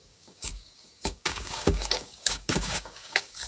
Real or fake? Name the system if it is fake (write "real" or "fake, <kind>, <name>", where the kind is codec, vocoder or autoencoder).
fake, codec, DAC